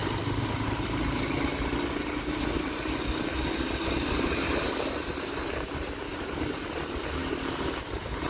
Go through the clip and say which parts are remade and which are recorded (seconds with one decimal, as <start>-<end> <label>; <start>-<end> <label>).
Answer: 0.0-6.1 recorded; 6.1-6.6 remade; 6.6-8.3 recorded